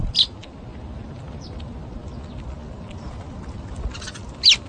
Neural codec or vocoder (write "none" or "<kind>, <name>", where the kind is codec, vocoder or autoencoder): none